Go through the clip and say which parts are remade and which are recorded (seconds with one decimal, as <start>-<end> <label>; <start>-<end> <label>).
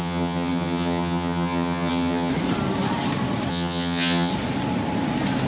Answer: 0.0-2.3 remade; 2.3-3.5 recorded; 3.5-4.3 remade; 4.3-5.5 recorded